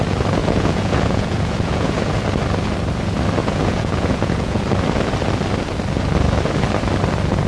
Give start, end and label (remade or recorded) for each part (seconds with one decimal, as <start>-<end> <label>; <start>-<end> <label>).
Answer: 0.0-0.4 recorded; 0.4-2.2 remade; 2.2-3.4 recorded; 3.4-4.6 remade; 4.6-7.5 recorded